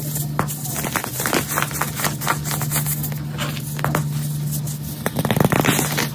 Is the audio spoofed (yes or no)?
no